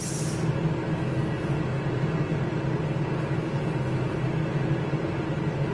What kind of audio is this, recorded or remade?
recorded